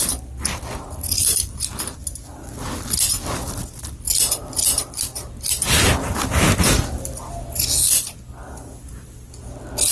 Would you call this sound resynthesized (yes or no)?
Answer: no